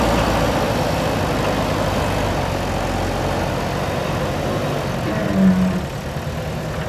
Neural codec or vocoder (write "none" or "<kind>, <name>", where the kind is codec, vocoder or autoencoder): none